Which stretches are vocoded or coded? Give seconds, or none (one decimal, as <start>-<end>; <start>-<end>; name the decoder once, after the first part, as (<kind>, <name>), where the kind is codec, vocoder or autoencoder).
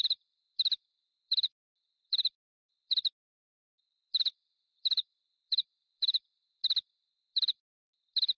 none